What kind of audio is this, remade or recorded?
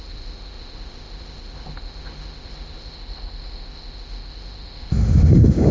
remade